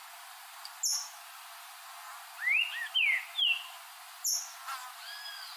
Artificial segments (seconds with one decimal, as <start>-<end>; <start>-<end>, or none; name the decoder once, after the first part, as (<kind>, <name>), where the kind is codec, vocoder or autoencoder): none